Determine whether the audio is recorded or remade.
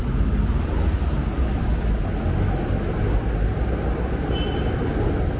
recorded